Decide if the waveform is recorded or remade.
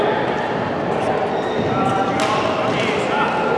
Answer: recorded